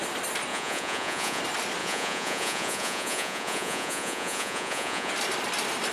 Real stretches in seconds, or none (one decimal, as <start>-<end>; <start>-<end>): 0.0-0.5; 1.4-1.8; 5.1-5.9